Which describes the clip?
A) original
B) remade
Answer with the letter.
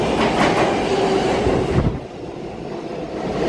A